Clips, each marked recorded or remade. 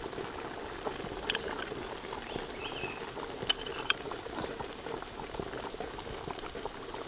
recorded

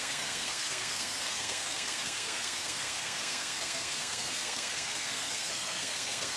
remade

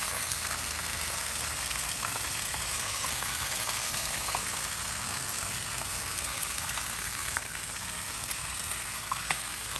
remade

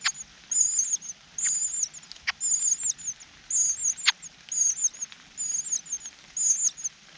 recorded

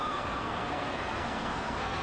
remade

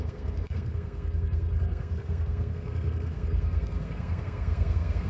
remade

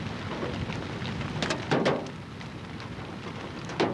recorded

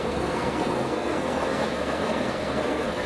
remade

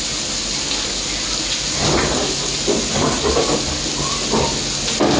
recorded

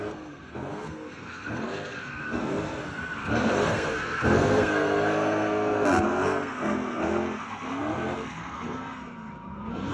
remade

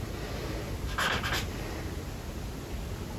recorded